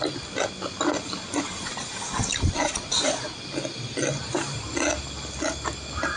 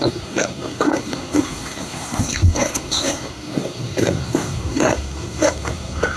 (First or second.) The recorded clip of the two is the first